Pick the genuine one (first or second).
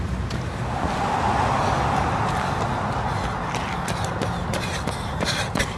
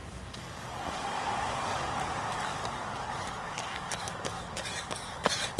first